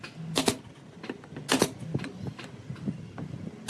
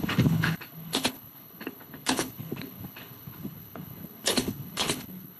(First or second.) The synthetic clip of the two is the second